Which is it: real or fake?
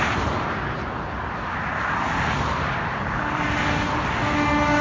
real